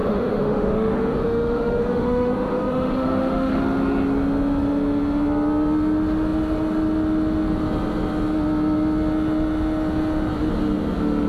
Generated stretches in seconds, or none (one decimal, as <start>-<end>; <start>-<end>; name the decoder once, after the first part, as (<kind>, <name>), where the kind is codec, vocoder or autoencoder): 0.0-3.6 (autoencoder, DAC-VAE)